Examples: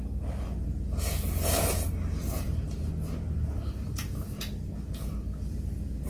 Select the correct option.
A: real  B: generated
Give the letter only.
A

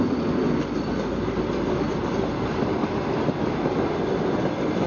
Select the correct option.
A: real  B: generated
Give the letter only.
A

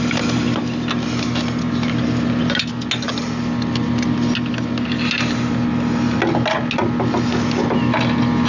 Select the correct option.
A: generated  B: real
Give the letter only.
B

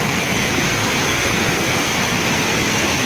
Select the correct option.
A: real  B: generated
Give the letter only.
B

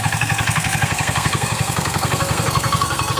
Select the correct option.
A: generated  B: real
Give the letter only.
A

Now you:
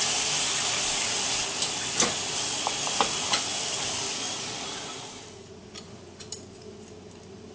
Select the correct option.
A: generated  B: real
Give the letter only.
B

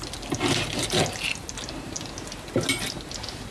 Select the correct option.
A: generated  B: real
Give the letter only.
B